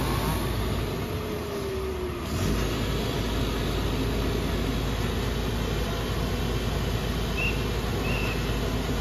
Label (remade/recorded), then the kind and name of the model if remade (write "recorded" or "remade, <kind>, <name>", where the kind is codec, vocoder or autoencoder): recorded